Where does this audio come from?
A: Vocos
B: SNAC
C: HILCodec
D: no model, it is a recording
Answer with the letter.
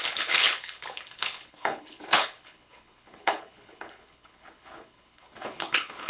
C